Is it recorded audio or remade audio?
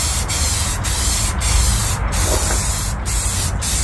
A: recorded